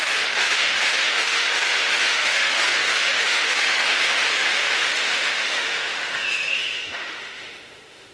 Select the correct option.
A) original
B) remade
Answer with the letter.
B